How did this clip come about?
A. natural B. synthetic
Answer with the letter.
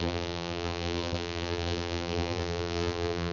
B